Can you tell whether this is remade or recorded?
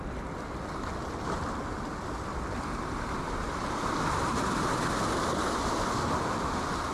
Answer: recorded